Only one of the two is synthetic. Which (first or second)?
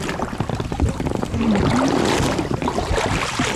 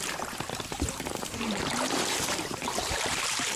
second